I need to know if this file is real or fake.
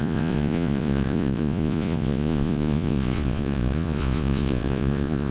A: fake